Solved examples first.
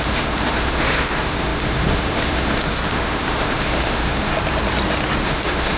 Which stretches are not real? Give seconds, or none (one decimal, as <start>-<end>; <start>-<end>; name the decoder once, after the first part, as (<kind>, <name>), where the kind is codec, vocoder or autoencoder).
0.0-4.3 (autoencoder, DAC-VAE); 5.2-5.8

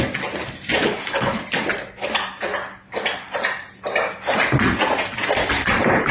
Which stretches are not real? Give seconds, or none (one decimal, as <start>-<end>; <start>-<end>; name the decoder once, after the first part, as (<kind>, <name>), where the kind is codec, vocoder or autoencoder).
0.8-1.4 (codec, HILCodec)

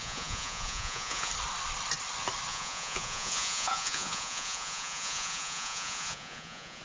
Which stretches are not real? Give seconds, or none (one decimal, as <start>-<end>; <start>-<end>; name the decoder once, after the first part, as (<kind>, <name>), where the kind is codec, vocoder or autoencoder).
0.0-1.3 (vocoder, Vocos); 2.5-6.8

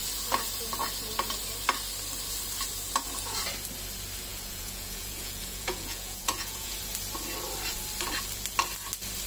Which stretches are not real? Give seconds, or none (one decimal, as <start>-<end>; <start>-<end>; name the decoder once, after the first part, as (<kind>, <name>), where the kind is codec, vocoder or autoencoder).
4.3-6.7 (vocoder, Vocos)